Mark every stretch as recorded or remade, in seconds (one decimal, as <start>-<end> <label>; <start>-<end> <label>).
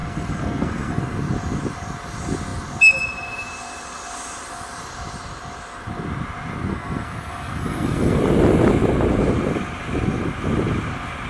0.0-1.0 remade; 1.0-6.7 recorded; 6.7-8.2 remade; 8.2-11.3 recorded